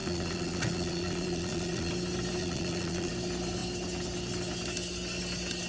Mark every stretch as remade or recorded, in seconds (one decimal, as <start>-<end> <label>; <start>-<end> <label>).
0.0-1.9 remade; 1.9-2.4 recorded; 2.4-3.1 remade; 3.1-5.7 recorded